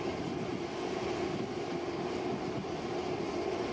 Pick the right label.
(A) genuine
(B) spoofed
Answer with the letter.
A